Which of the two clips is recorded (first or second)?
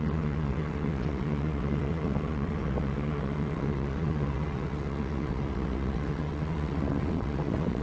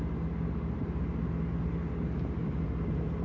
second